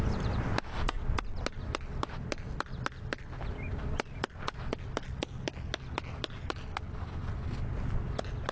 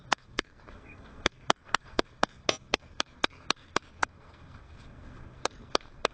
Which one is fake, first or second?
second